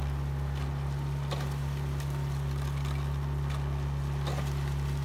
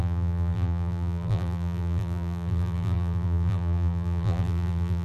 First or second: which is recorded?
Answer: first